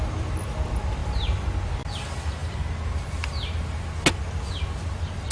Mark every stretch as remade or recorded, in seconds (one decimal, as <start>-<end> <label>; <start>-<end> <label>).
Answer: 0.0-5.3 recorded